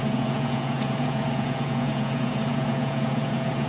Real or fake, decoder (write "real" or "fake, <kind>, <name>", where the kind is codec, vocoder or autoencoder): fake, vocoder, Vocos